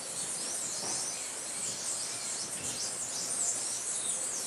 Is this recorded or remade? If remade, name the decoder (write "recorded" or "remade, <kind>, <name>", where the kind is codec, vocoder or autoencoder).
recorded